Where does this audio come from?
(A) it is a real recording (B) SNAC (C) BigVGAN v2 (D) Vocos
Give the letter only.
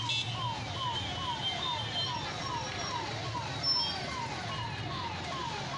A